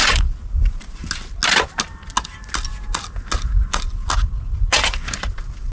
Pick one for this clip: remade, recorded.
recorded